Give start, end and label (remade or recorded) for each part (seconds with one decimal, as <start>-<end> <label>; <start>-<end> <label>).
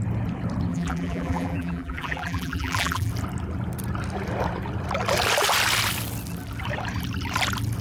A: 0.0-0.7 recorded; 0.7-3.1 remade; 3.1-7.8 recorded